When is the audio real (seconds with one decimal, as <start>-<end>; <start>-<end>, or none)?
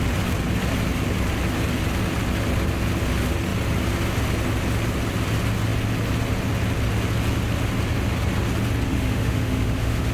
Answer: 0.0-8.9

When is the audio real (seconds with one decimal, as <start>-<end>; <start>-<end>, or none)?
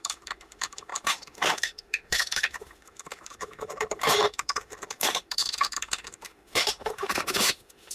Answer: none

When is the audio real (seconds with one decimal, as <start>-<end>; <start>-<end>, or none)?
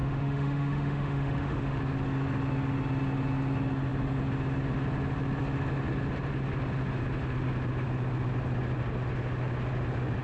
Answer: 1.8-10.2